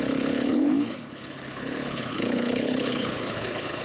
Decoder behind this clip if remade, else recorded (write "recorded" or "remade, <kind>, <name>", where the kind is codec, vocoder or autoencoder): remade, codec, HILCodec